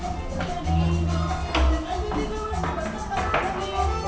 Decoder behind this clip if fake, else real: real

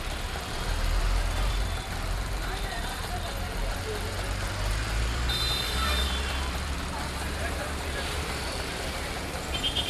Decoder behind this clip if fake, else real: fake, vocoder, BigVGAN v2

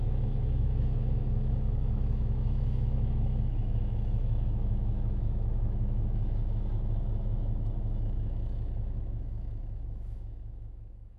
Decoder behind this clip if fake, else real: fake, autoencoder, DAC-VAE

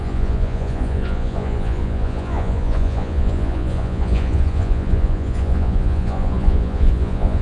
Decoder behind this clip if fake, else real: fake, vocoder, Vocos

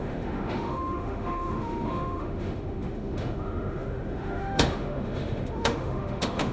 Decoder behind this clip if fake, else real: fake, autoencoder, DAC-VAE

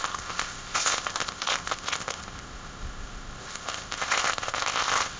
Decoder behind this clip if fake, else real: fake, codec, ZipCodec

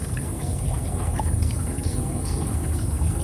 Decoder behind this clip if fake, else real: fake, codec, SNAC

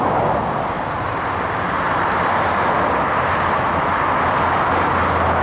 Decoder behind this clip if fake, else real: real